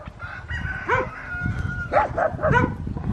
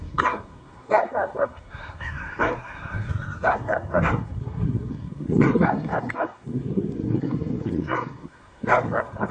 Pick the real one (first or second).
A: first